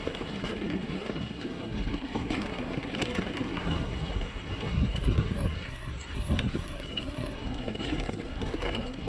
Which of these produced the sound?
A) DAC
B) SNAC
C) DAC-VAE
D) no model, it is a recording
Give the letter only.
B